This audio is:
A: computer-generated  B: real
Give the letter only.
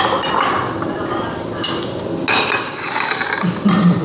B